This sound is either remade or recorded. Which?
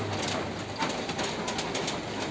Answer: recorded